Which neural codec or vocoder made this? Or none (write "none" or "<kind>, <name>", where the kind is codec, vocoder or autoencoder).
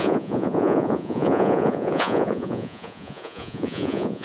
vocoder, Vocos